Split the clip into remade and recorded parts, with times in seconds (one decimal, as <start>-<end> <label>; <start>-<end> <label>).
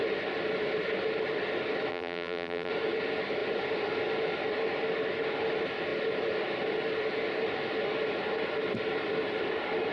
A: 0.0-1.9 recorded; 1.9-2.7 remade; 2.7-9.9 recorded